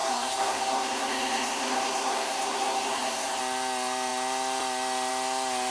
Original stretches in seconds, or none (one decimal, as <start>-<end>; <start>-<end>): 3.4-5.7